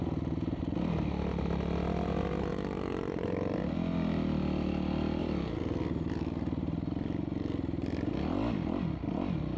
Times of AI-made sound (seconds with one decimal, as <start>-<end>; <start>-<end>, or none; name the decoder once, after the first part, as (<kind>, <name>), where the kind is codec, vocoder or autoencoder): none